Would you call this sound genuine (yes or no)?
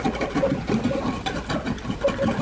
yes